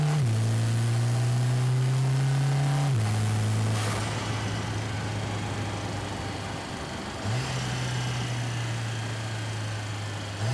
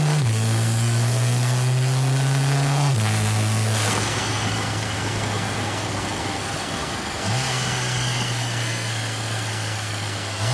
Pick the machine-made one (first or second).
second